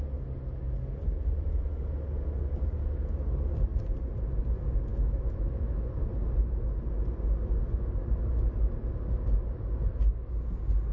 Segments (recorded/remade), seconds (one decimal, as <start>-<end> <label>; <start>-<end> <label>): 0.0-4.9 recorded; 4.9-6.0 remade; 6.0-10.9 recorded